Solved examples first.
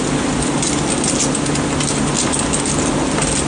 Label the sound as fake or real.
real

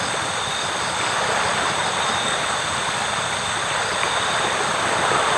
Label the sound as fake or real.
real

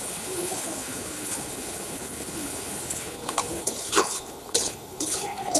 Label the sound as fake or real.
fake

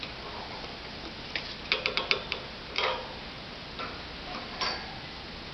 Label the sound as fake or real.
real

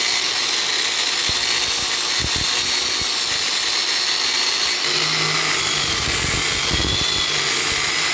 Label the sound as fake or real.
real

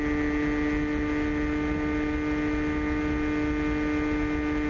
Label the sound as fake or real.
real